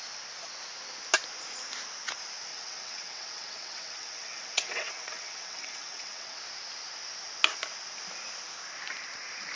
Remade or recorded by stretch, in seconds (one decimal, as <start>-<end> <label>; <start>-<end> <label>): 0.0-2.5 recorded; 2.5-6.4 remade; 6.4-9.6 recorded

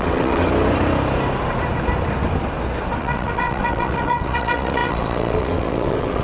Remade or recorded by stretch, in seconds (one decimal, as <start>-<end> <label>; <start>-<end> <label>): 0.0-0.5 remade; 0.5-3.0 recorded; 3.0-6.2 remade